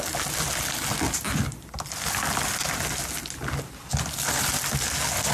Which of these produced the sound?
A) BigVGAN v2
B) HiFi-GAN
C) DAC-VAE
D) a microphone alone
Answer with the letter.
D